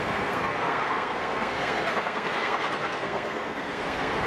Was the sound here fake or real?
fake